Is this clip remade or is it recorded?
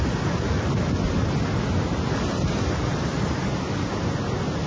recorded